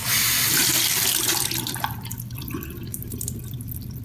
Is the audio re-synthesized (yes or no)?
yes